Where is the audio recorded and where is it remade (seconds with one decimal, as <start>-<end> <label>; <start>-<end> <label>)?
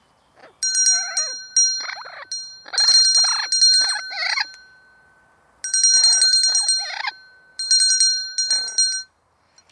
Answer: 0.0-9.7 recorded